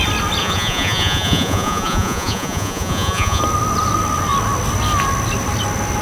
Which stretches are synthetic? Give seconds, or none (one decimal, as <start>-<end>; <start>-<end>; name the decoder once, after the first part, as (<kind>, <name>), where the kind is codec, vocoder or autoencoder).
0.4-3.4 (vocoder, Vocos)